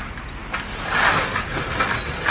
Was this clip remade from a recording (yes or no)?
no